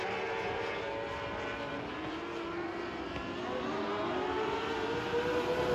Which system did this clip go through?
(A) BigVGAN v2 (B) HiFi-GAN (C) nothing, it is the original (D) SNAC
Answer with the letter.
C